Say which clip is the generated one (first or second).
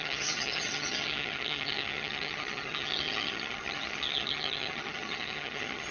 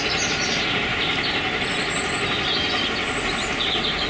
first